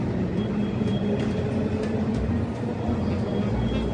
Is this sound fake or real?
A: real